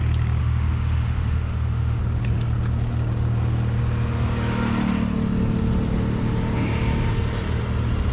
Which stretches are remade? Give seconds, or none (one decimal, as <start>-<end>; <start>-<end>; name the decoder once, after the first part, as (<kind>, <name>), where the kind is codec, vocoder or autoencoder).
0.4-2.0 (autoencoder, DAC-VAE)